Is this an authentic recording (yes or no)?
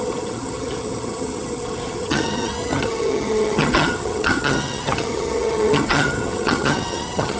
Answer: no